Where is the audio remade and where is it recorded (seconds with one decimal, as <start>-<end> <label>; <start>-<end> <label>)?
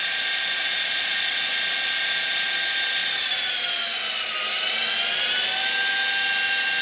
0.0-0.6 recorded; 0.6-1.5 remade; 1.5-3.0 recorded; 3.0-3.5 remade; 3.5-6.8 recorded